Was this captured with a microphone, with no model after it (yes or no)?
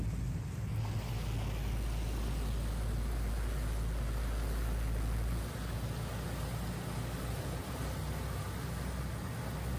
yes